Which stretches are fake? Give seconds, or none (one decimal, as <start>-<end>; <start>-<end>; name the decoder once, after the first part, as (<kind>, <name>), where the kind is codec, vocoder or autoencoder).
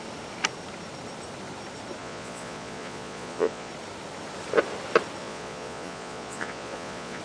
2.0-3.7 (vocoder, Vocos); 5.2-7.2